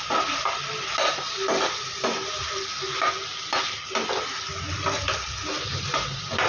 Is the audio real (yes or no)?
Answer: yes